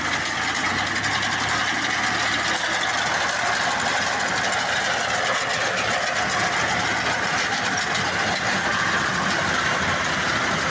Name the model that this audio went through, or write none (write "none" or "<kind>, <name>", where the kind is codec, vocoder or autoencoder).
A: none